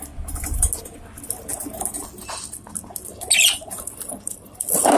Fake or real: real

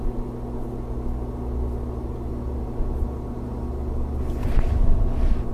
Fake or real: real